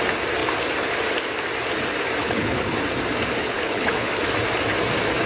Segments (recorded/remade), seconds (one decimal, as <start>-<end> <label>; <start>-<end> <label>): 0.0-2.2 recorded; 2.2-2.8 remade; 2.8-3.4 recorded; 3.4-4.1 remade; 4.1-5.3 recorded